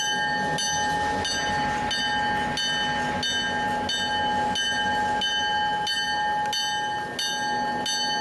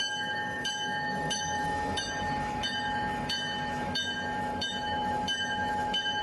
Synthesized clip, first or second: second